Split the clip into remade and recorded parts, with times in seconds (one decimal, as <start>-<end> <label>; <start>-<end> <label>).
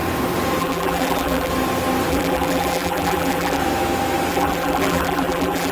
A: 0.0-0.6 recorded; 0.6-1.5 remade; 1.5-2.1 recorded; 2.1-3.6 remade; 3.6-4.3 recorded; 4.3-5.7 remade